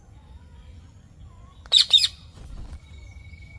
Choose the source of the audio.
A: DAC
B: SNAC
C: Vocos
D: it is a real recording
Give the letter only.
C